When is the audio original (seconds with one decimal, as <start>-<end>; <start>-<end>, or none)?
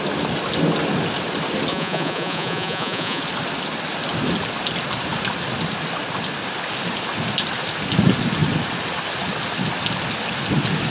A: 0.0-1.7; 3.2-10.9